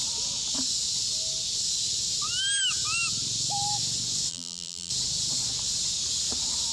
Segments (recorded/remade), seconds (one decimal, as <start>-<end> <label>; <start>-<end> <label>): 0.0-4.3 recorded; 4.3-4.9 remade; 4.9-6.7 recorded